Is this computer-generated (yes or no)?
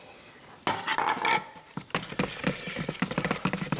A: no